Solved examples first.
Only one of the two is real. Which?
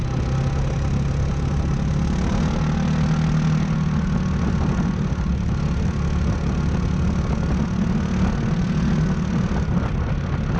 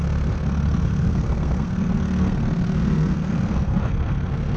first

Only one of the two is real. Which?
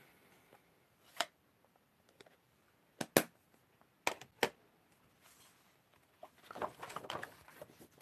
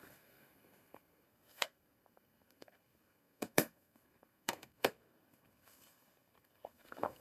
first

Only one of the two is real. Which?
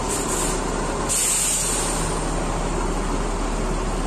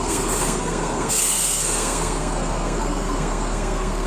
first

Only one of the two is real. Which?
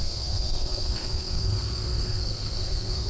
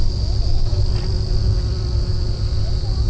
second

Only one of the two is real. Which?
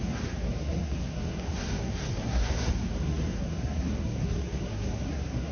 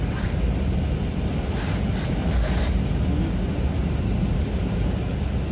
second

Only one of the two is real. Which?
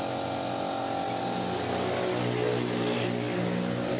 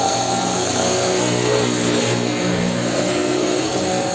first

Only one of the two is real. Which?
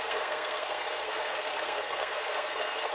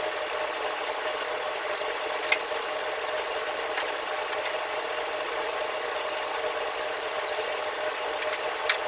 second